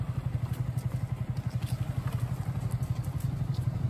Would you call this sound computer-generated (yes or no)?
no